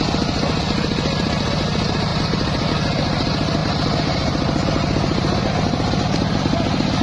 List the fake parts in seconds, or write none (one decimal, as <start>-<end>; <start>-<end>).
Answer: 2.1-2.7; 3.6-6.4